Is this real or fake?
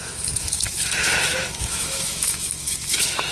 fake